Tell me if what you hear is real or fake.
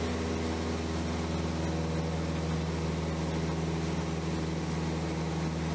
real